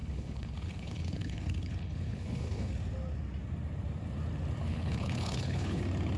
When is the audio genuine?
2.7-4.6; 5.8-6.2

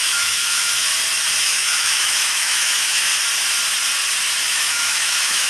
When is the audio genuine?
0.9-1.4; 3.1-4.4

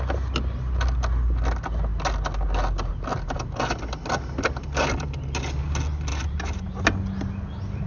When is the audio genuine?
0.0-6.1; 6.8-7.9